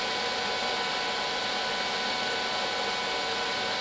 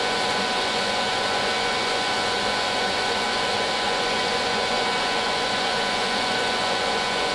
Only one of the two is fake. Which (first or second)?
second